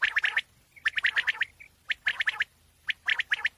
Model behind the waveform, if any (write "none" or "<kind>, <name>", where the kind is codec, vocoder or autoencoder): none